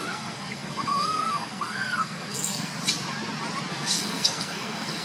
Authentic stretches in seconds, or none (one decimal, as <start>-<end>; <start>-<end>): 2.7-3.7